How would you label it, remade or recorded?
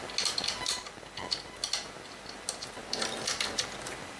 recorded